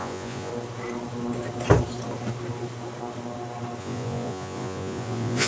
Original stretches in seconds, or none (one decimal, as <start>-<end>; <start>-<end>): 0.5-3.8